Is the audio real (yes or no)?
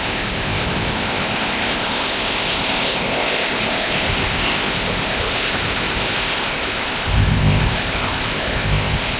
no